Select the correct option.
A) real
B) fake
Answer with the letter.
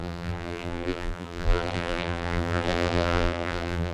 B